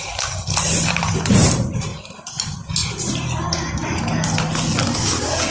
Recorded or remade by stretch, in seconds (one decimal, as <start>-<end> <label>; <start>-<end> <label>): 0.0-1.9 remade; 1.9-2.4 recorded; 2.4-2.8 remade; 2.8-5.5 recorded